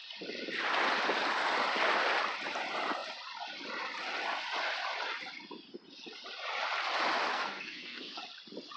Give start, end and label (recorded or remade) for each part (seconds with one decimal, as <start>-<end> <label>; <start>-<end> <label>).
0.0-7.3 recorded; 7.3-8.2 remade; 8.2-8.8 recorded